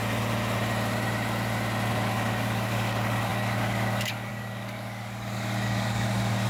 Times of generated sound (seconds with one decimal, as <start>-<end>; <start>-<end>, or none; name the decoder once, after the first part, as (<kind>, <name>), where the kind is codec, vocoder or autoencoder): 1.9-6.5 (codec, DAC)